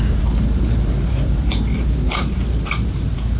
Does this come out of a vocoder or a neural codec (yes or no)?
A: yes